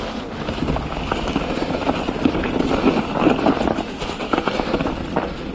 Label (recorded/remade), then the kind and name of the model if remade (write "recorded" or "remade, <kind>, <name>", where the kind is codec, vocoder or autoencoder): recorded